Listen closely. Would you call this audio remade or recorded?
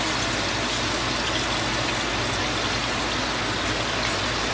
recorded